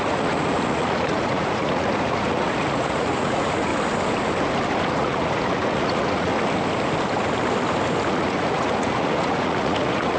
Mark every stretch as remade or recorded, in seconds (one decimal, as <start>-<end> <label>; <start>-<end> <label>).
0.0-3.7 remade; 3.7-4.8 recorded; 4.8-6.3 remade; 6.3-8.1 recorded; 8.1-10.2 remade